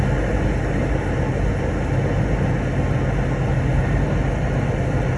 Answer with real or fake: real